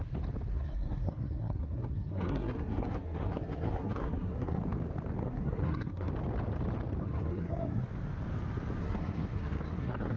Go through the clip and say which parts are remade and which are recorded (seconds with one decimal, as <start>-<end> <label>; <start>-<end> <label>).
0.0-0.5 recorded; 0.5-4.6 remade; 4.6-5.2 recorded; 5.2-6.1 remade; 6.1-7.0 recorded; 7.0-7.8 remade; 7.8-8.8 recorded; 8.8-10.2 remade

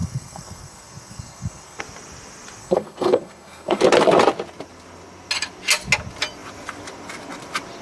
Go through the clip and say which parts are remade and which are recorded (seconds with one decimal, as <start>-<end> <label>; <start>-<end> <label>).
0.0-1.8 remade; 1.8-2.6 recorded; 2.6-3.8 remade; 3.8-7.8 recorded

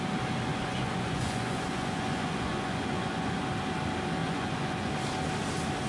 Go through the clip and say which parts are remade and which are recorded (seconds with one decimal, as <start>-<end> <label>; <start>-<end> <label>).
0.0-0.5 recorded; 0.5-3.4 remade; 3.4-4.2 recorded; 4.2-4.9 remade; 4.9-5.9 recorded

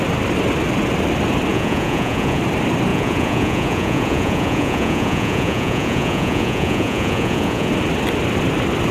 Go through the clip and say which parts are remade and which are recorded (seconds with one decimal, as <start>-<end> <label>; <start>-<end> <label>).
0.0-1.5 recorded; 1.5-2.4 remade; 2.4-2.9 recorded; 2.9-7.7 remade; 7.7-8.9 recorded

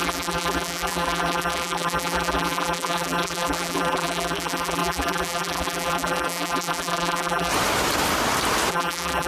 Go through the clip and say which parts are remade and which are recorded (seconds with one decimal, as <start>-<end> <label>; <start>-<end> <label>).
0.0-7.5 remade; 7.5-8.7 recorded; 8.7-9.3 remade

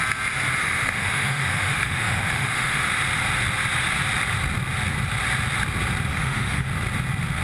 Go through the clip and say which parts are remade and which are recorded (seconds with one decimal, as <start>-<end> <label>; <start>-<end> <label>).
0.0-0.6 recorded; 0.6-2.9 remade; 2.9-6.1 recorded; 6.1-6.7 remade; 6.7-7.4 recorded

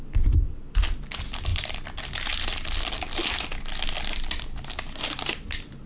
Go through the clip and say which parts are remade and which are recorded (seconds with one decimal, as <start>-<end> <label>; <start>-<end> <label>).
0.0-5.9 recorded

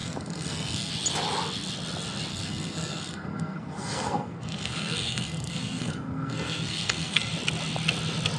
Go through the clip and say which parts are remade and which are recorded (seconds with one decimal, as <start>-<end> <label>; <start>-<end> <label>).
0.0-0.9 remade; 0.9-2.3 recorded; 2.3-7.3 remade; 7.3-8.4 recorded